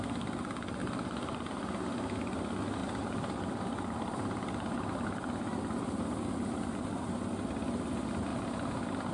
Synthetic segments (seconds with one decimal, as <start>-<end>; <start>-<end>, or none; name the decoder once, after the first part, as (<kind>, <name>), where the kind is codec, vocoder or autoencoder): 0.8-1.5 (vocoder, BigVGAN v2); 2.8-3.4